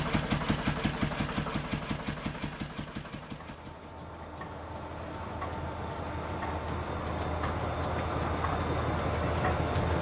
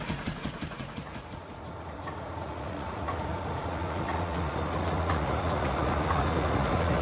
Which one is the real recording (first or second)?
first